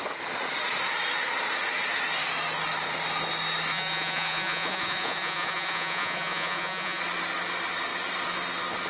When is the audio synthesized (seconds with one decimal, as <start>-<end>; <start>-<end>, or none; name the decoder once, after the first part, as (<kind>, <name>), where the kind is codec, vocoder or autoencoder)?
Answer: 3.7-7.0 (vocoder, Vocos)